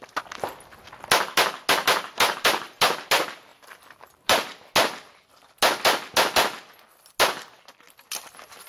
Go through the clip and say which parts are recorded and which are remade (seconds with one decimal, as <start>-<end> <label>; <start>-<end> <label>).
0.0-3.5 recorded; 3.5-4.7 remade; 4.7-8.7 recorded